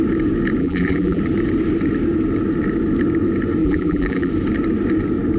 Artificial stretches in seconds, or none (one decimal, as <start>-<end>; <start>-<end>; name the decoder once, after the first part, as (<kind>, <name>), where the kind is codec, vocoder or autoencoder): 0.6-1.2 (vocoder, BigVGAN v2); 3.6-4.3